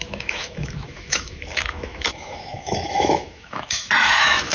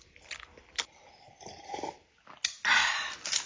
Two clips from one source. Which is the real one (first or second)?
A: second